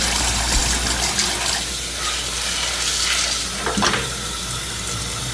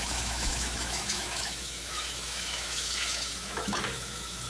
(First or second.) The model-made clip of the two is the second